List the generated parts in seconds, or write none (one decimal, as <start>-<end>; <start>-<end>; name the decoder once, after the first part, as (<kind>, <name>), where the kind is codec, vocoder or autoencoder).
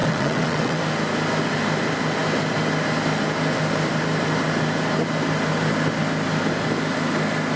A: 0.0-0.8 (vocoder, WaveNeXt)